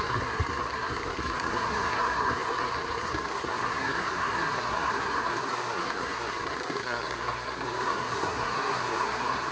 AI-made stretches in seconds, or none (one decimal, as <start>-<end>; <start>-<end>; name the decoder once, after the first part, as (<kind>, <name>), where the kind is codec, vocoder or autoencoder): 0.0-9.5 (codec, SNAC)